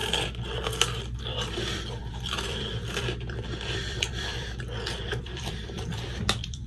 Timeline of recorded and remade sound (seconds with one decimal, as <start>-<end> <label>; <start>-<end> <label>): 0.0-1.2 recorded; 1.2-6.7 remade

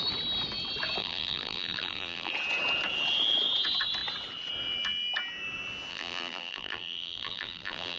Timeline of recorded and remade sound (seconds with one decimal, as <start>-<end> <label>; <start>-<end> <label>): 0.0-1.0 recorded; 1.0-2.3 remade; 2.3-5.9 recorded; 5.9-8.0 remade

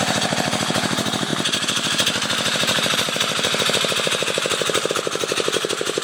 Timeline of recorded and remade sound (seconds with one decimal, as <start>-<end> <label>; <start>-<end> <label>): 0.0-6.0 remade

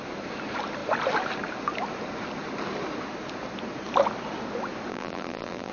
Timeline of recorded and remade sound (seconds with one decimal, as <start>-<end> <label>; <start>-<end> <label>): 0.0-4.9 recorded; 4.9-5.7 remade

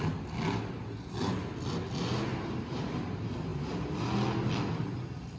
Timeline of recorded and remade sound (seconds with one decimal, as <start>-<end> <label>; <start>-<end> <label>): 0.0-5.4 recorded